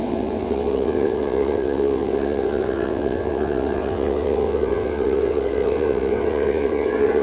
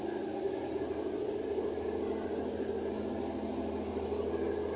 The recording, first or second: second